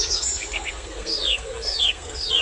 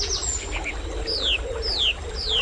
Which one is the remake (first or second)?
first